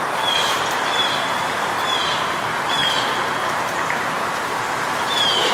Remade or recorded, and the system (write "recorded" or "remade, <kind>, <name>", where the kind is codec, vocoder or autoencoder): remade, vocoder, BigVGAN v2